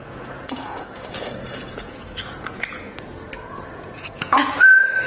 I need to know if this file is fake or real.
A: fake